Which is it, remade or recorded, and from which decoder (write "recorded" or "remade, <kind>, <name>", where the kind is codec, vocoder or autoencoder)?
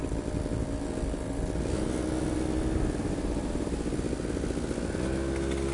recorded